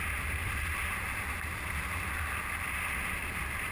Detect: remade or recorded recorded